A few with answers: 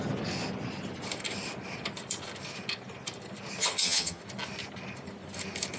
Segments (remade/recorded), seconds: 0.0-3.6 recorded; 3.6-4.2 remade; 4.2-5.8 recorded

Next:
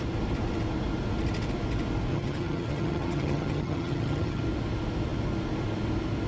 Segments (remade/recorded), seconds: 0.0-2.1 recorded; 2.1-4.4 remade; 4.4-6.3 recorded

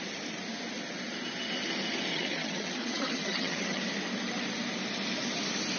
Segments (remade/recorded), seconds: 0.0-2.1 recorded; 2.1-3.8 remade; 3.8-5.8 recorded

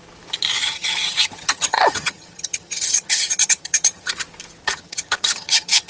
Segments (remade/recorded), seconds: 0.0-0.6 recorded; 0.6-4.1 remade; 4.1-4.6 recorded; 4.6-5.9 remade

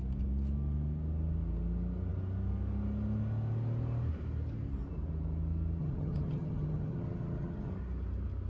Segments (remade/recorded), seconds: 0.0-5.8 recorded; 5.8-7.7 remade; 7.7-8.5 recorded

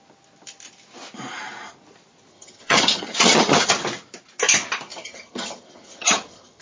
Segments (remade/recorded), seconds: 0.0-2.3 recorded; 2.3-3.7 remade; 3.7-4.9 recorded; 4.9-6.6 remade

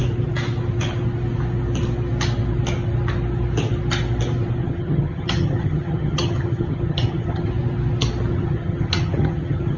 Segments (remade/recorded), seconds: 0.0-4.6 recorded; 4.6-7.5 remade; 7.5-8.3 recorded; 8.3-9.8 remade